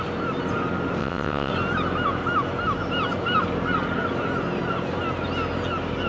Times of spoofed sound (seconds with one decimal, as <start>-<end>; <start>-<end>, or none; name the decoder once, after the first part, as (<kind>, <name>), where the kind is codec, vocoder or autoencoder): 1.0-1.5 (vocoder, WaveNeXt)